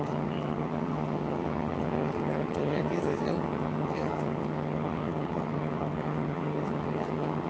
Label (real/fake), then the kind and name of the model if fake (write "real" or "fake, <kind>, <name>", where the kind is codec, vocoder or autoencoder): fake, vocoder, HiFi-GAN